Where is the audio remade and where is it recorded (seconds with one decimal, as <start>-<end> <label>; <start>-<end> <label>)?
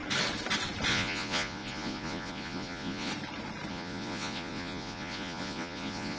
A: 0.0-0.9 recorded; 0.9-3.1 remade; 3.1-3.7 recorded; 3.7-6.2 remade